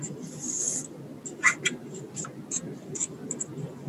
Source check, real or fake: real